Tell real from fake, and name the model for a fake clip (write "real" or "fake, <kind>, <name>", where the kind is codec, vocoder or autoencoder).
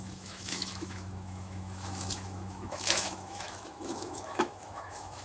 fake, autoencoder, DAC-VAE